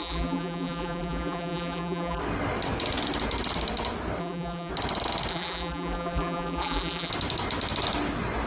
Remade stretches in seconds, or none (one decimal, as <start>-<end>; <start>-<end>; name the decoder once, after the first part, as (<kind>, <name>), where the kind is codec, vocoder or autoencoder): 0.0-2.2 (vocoder, BigVGAN v2); 4.2-4.7; 5.3-7.1